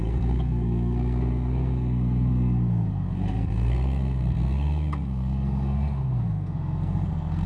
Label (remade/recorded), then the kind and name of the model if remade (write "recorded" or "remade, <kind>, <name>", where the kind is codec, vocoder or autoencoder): remade, codec, SNAC